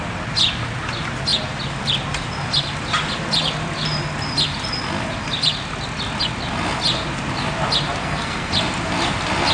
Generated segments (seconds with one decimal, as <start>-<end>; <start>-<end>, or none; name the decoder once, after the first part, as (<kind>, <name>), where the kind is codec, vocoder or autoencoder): 8.0-8.5 (codec, SNAC)